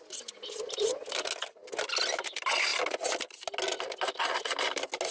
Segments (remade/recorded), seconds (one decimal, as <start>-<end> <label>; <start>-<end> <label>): 0.0-5.1 recorded